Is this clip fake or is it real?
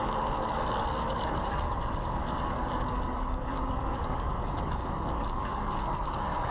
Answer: fake